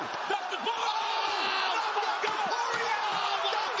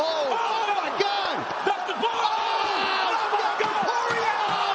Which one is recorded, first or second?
second